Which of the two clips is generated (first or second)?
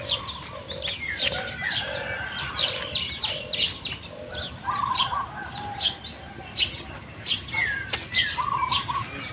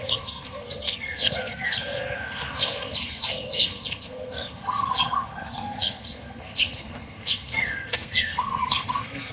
second